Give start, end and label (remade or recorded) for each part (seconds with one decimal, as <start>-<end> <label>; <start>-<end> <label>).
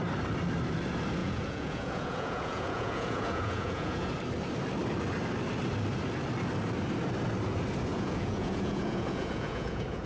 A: 0.0-1.2 recorded; 1.2-4.1 remade; 4.1-7.9 recorded; 7.9-10.1 remade